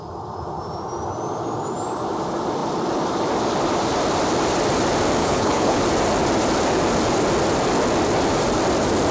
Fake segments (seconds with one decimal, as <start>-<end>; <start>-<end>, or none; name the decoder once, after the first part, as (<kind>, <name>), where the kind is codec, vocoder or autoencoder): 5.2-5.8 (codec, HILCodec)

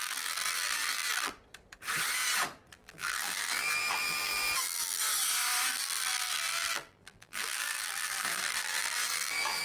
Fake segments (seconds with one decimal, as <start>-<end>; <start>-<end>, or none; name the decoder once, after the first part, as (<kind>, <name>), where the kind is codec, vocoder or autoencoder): 0.0-1.3 (vocoder, BigVGAN v2); 2.7-5.0; 5.7-9.6

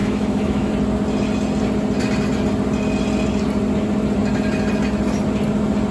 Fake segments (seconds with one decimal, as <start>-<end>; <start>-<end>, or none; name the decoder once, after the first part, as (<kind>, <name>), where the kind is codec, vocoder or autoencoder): 0.0-0.7 (autoencoder, DAC-VAE)

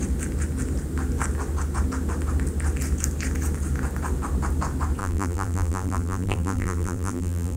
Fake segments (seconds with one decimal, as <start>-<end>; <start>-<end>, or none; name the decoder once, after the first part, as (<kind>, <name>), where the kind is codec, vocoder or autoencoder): 5.0-7.6 (vocoder, BigVGAN v2)

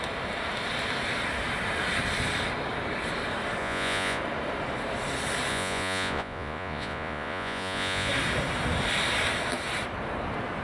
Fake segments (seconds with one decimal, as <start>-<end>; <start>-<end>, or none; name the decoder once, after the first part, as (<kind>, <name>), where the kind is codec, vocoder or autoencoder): 3.6-4.2 (vocoder, Vocos); 5.5-8.1

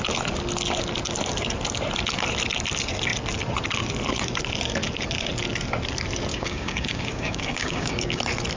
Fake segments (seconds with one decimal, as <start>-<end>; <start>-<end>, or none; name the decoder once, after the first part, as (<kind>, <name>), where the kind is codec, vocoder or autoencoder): 6.3-8.2 (codec, DAC)